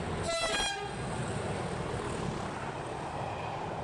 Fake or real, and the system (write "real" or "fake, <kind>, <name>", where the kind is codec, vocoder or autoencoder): real